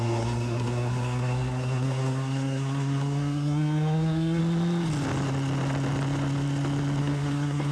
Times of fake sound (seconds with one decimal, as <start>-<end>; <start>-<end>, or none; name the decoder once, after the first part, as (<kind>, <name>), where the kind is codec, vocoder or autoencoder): 0.0-4.4 (codec, SNAC); 7.0-7.7